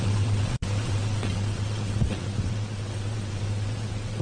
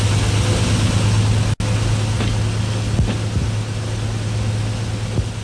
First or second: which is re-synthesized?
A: first